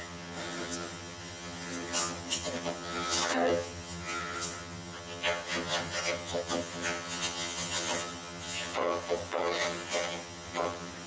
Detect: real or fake fake